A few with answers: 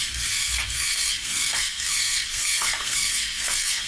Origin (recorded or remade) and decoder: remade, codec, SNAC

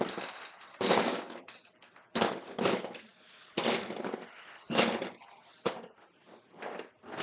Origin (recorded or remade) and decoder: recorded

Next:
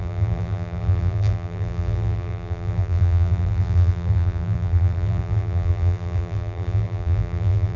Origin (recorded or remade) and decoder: remade, vocoder, BigVGAN v2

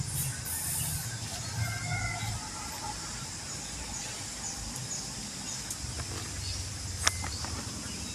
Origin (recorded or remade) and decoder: recorded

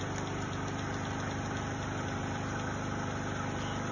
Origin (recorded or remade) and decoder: recorded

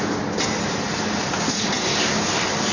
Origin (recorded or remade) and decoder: recorded